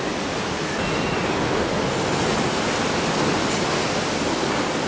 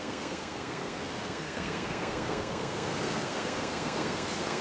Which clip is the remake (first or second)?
second